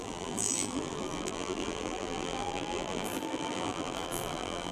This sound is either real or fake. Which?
fake